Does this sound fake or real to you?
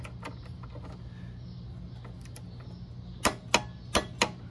real